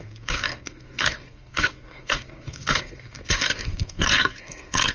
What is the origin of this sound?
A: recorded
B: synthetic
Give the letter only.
B